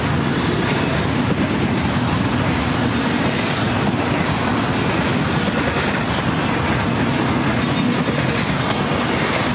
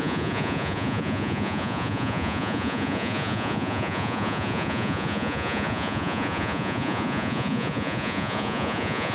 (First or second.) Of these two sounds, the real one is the first